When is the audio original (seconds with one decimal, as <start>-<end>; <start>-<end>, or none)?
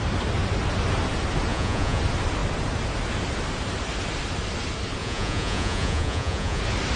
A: 0.0-1.5; 2.0-5.0; 6.6-7.0